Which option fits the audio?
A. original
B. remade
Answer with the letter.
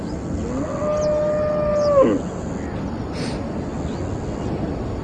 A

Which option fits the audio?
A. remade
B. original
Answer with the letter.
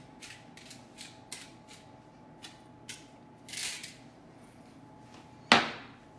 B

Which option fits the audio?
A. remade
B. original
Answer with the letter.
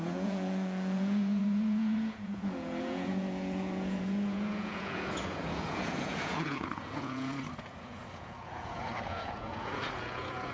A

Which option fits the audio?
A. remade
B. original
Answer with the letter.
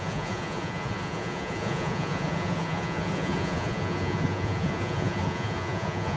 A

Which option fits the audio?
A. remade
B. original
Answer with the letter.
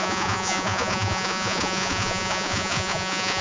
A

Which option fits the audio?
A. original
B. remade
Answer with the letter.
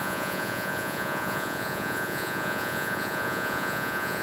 B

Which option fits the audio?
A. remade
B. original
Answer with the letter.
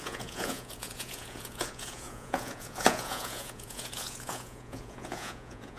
A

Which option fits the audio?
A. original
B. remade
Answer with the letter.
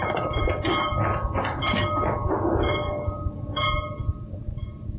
A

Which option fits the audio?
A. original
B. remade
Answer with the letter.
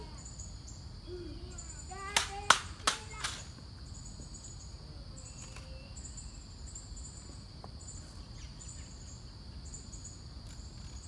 A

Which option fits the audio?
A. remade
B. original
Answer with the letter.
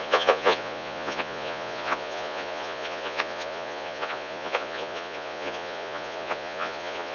A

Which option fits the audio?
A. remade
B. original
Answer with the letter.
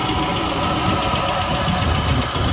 B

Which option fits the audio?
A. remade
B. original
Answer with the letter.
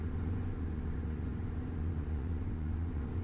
A